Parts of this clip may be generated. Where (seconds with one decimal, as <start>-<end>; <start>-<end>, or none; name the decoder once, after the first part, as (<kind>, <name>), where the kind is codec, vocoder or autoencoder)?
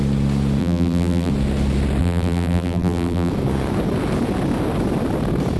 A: 0.6-1.3 (vocoder, BigVGAN v2); 2.0-3.3